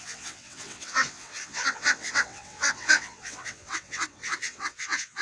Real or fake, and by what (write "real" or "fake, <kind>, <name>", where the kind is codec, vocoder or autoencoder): fake, vocoder, WaveNeXt